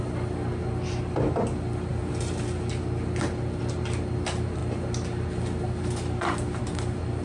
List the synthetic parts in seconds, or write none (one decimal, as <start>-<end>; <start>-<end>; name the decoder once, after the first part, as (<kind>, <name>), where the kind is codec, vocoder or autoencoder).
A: none